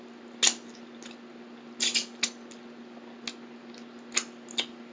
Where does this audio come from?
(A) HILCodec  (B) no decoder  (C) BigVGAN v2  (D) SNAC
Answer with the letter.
B